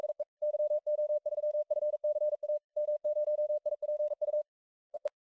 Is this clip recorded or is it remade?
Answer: remade